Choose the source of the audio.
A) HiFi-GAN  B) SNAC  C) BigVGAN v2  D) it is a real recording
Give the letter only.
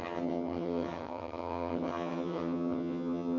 A